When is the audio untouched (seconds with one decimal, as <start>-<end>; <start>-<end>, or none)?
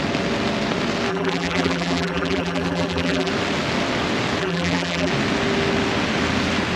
0.0-1.1; 3.3-4.4; 5.1-6.8